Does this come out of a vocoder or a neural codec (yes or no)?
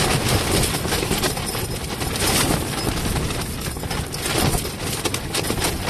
no